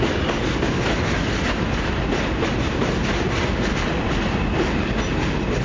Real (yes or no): yes